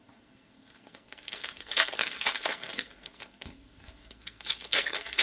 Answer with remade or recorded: remade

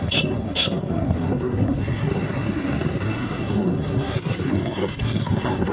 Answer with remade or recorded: remade